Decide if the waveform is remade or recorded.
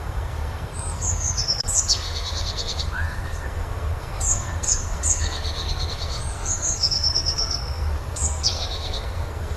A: remade